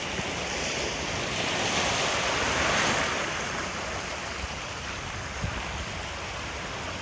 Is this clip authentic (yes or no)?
no